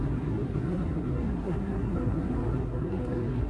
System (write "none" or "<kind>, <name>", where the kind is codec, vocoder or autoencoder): codec, SNAC